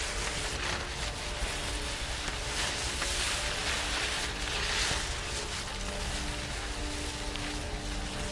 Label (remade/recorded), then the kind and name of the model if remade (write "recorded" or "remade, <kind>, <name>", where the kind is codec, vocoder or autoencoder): recorded